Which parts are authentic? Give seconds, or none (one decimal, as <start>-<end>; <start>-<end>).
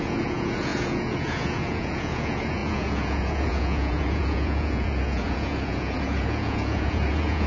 none